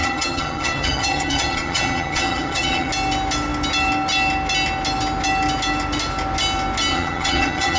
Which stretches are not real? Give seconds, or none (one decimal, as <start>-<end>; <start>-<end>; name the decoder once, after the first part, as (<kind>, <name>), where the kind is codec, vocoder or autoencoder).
0.0-2.9 (vocoder, HiFi-GAN); 6.9-7.8